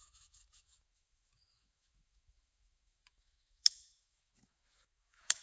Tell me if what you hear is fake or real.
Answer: fake